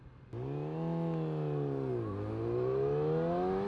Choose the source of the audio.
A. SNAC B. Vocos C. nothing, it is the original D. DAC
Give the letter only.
C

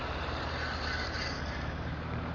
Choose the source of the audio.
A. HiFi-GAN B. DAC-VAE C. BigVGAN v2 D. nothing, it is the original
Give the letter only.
C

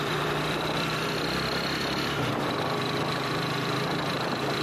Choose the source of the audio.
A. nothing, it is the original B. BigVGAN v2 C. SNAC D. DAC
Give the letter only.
B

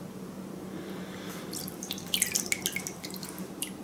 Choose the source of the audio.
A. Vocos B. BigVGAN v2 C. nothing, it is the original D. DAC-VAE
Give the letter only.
C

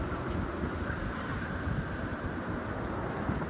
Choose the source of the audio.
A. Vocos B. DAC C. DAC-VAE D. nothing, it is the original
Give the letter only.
D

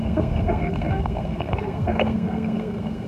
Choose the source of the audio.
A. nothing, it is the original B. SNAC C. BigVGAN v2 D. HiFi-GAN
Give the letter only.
B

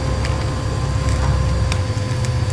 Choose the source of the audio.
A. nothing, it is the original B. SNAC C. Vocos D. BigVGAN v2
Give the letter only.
A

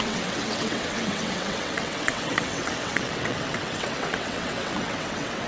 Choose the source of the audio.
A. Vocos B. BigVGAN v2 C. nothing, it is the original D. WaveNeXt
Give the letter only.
D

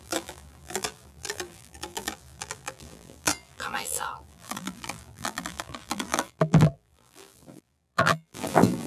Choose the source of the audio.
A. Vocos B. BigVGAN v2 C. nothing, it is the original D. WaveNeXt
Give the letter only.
B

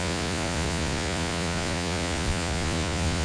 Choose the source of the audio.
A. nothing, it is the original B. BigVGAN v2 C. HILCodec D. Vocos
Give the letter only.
D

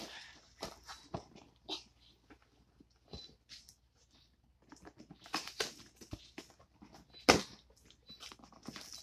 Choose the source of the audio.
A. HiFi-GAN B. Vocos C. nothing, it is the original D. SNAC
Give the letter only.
C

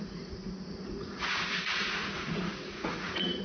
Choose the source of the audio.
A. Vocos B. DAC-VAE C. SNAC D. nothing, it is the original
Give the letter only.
A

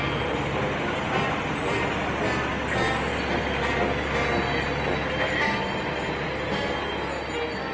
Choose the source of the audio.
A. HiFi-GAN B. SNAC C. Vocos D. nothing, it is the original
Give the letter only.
D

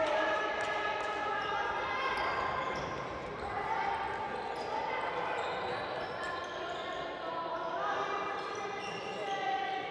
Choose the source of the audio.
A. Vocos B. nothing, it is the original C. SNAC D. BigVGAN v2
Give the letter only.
B